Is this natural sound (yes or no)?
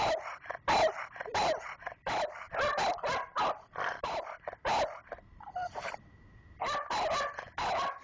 yes